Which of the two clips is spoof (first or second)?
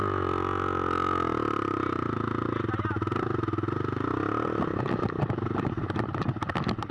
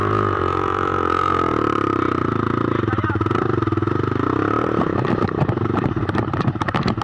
second